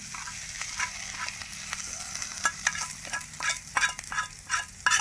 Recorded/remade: recorded